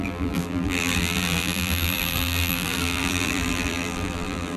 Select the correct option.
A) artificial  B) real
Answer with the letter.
A